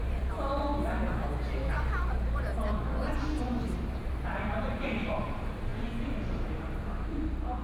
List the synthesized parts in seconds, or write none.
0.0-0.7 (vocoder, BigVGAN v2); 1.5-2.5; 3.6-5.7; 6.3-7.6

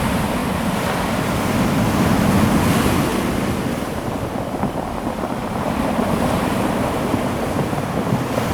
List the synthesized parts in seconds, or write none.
5.4-6.6 (vocoder, BigVGAN v2)